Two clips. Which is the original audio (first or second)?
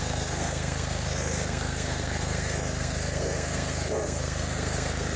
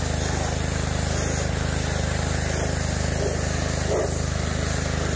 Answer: second